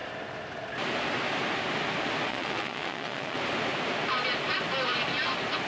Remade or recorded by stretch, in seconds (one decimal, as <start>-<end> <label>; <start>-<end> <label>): 0.0-2.3 recorded; 2.3-3.4 remade; 3.4-5.7 recorded